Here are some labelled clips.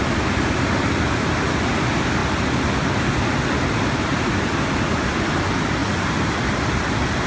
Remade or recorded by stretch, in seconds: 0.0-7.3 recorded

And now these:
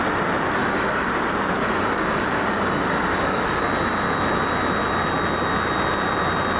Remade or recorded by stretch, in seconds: 0.0-0.6 recorded; 0.6-1.1 remade; 1.1-1.6 recorded; 1.6-3.6 remade; 3.6-6.6 recorded

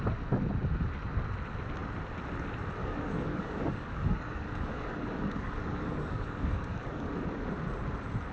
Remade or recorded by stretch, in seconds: 0.0-2.8 recorded; 2.8-7.1 remade; 7.1-8.3 recorded